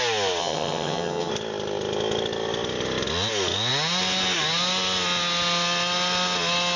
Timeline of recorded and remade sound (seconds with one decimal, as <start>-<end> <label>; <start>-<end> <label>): 0.0-0.4 recorded; 0.4-1.3 remade; 1.3-6.8 recorded